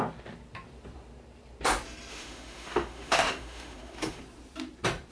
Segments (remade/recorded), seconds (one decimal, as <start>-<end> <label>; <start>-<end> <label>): 0.0-2.1 recorded; 2.1-4.2 remade; 4.2-5.1 recorded

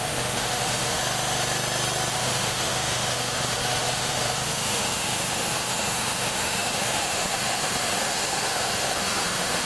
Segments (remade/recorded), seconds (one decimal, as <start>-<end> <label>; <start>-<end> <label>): 0.0-1.0 remade; 1.0-2.1 recorded; 2.1-9.7 remade

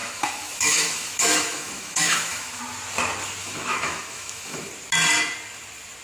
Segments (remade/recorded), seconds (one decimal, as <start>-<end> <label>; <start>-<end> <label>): 0.0-2.6 remade; 2.6-3.4 recorded; 3.4-4.7 remade; 4.7-6.0 recorded

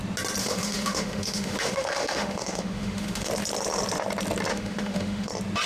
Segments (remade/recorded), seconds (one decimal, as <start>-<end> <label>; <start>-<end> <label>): 0.0-0.4 recorded; 0.4-3.3 remade; 3.3-4.5 recorded; 4.5-5.3 remade; 5.3-5.7 recorded

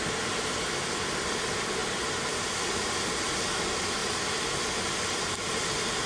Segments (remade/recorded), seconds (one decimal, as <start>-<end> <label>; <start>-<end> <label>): 0.0-6.1 recorded

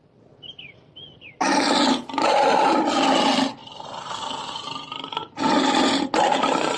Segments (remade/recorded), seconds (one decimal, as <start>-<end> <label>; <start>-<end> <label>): 0.0-6.8 recorded

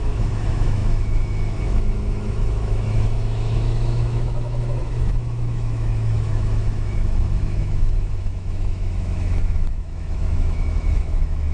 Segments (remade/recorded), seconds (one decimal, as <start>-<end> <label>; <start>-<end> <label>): 0.0-11.5 remade

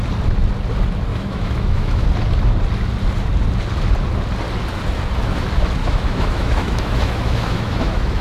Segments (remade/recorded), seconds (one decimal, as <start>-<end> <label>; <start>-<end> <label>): 0.0-1.1 recorded; 1.1-2.1 remade; 2.1-5.8 recorded; 5.8-8.2 remade